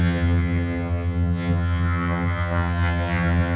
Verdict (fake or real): fake